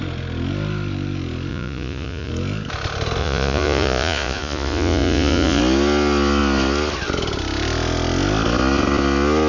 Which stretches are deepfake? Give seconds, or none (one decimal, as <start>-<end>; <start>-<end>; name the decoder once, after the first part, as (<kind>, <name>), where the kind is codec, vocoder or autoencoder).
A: 1.5-2.3 (vocoder, Vocos); 3.2-5.6